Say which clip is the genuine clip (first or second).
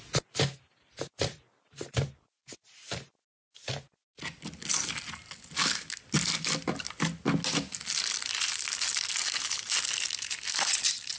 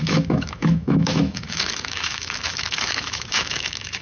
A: first